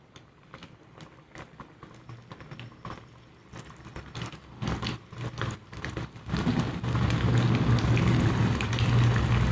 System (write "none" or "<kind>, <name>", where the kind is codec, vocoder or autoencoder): none